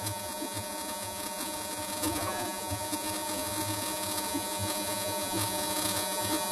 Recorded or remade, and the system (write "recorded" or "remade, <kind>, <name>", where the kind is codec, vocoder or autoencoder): remade, vocoder, Vocos